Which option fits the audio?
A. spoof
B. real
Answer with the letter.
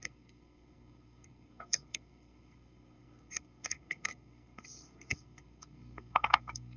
A